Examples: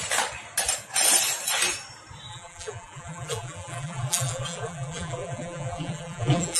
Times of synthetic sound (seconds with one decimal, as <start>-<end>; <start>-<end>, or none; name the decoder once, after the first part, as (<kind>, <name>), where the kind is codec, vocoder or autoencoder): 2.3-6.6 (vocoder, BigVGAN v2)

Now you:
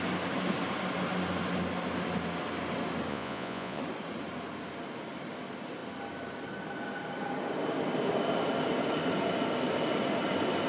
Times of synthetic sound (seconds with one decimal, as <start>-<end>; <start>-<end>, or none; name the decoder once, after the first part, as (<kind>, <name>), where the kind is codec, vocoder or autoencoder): 3.1-3.8 (vocoder, Vocos)

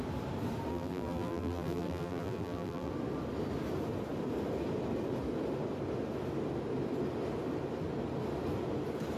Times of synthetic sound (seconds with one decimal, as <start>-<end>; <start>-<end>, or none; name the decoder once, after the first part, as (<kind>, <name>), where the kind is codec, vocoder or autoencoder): 0.7-2.9 (vocoder, BigVGAN v2)

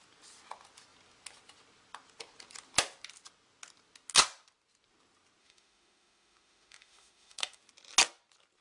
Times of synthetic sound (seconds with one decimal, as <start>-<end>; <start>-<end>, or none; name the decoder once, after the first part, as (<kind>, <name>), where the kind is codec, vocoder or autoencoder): 5.4-7.6 (autoencoder, DAC-VAE)

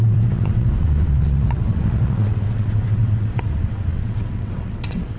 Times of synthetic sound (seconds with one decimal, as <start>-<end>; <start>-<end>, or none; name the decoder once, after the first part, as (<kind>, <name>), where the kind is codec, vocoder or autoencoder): 0.0-5.2 (vocoder, WaveNeXt)